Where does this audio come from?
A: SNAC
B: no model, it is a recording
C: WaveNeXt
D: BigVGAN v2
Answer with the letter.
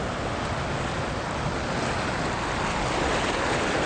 B